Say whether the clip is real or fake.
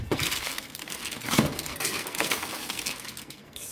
fake